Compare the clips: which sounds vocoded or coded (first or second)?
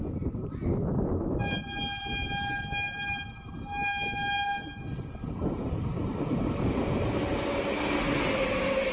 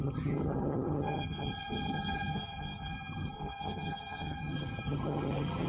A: second